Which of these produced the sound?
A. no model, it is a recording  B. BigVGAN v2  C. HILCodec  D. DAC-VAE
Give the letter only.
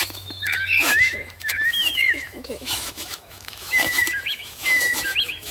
D